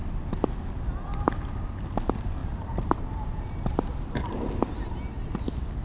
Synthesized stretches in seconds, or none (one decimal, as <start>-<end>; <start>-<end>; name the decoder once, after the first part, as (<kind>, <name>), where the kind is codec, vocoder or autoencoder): 2.4-4.5 (vocoder, BigVGAN v2)